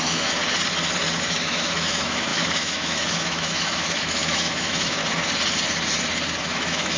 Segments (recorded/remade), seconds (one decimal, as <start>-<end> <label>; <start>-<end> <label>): 0.0-0.4 remade; 0.4-1.2 recorded; 1.2-5.0 remade; 5.0-6.4 recorded; 6.4-7.0 remade